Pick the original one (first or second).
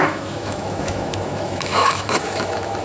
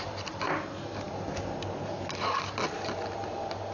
second